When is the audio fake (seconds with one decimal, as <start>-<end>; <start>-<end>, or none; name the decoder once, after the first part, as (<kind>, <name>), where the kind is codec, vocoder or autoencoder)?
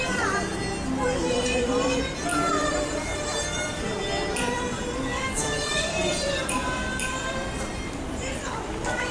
0.0-0.5 (vocoder, BigVGAN v2); 1.3-9.1